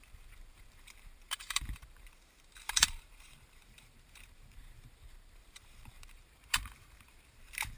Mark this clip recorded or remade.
remade